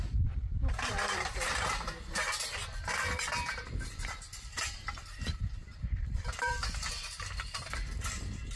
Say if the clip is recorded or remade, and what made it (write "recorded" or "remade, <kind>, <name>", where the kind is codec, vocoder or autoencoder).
remade, vocoder, BigVGAN v2